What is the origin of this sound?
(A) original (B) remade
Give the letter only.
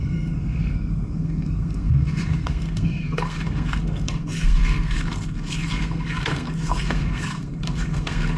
B